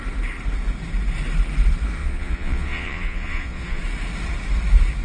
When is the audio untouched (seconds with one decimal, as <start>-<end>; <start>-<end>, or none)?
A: 0.0-2.0; 3.8-5.0